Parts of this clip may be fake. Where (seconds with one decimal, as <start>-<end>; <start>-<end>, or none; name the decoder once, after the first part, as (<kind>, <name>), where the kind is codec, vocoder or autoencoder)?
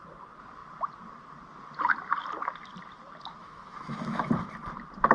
3.4-4.3 (autoencoder, DAC-VAE)